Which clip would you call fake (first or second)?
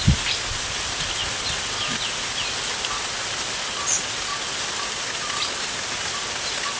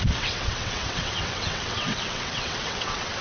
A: second